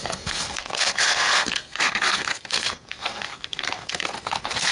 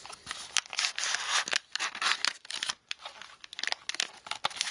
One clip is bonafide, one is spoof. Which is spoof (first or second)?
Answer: first